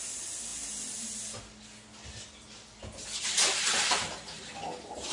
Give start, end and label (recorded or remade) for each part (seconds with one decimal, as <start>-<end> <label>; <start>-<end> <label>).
0.0-5.1 recorded